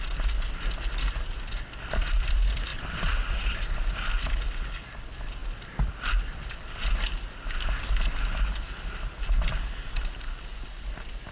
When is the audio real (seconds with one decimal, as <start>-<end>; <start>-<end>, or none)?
0.0-2.7; 3.7-11.3